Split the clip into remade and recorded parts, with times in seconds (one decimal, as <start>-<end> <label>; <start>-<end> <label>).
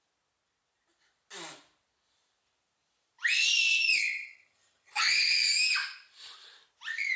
0.0-3.9 recorded; 3.9-5.0 remade; 5.0-7.2 recorded